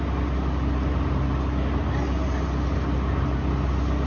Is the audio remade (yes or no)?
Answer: no